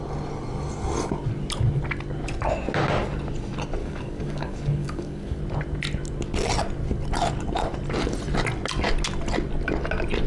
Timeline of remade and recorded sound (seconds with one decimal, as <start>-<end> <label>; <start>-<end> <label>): 0.0-3.8 recorded; 3.8-5.4 remade; 5.4-10.3 recorded